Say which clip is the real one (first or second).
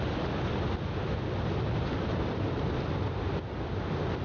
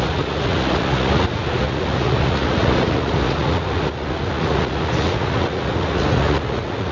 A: first